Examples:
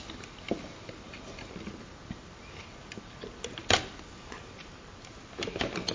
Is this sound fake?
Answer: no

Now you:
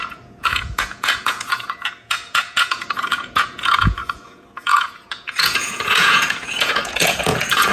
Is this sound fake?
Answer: yes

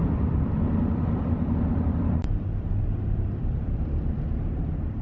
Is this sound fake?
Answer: yes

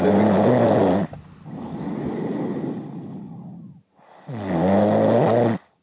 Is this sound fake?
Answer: no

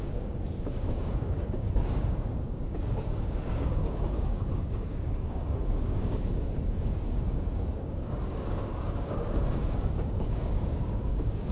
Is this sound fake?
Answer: yes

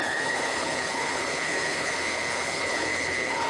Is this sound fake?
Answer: yes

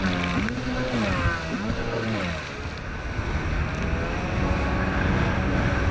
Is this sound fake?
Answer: no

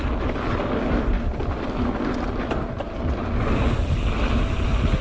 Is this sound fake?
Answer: no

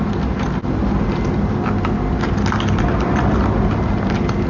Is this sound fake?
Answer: no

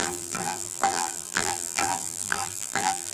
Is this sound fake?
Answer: yes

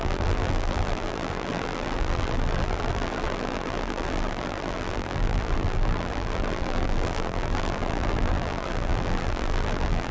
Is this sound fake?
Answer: yes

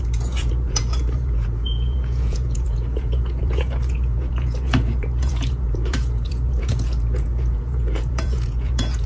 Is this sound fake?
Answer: yes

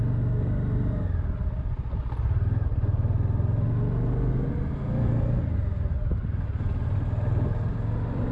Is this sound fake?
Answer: no